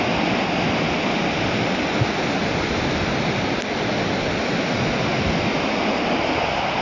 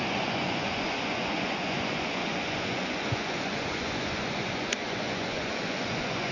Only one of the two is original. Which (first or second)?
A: first